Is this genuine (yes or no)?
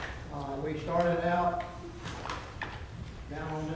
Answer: no